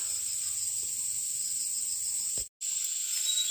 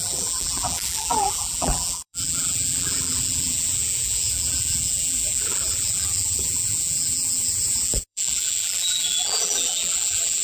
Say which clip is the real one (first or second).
first